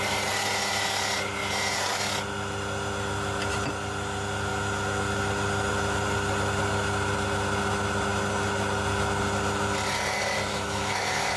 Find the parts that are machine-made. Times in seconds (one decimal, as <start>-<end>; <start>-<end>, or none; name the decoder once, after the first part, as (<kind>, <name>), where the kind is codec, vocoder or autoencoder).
10.5-11.4 (autoencoder, DAC-VAE)